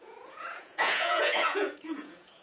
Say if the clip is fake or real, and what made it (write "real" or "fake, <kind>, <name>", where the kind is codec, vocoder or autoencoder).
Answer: fake, vocoder, Vocos